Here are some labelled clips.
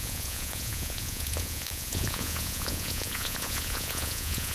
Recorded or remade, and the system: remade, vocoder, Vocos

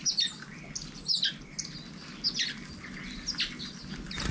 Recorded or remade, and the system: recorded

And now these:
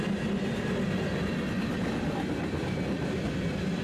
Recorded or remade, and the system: recorded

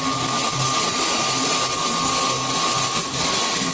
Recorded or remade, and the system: recorded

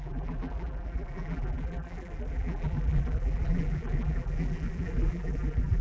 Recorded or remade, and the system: remade, vocoder, BigVGAN v2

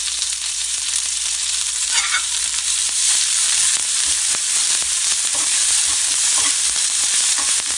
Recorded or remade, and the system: remade, vocoder, BigVGAN v2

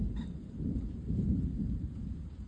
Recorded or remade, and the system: remade, vocoder, BigVGAN v2